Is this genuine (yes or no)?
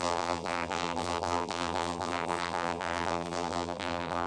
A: no